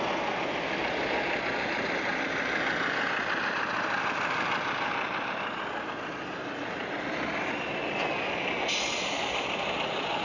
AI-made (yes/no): no